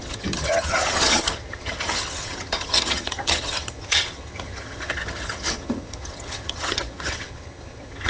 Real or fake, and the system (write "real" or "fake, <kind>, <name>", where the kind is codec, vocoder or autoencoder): fake, vocoder, HiFi-GAN